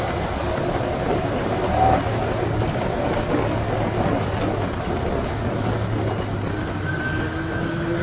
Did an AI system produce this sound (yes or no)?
no